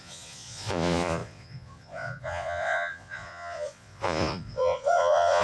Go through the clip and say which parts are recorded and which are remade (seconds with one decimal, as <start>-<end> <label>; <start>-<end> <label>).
0.0-5.4 remade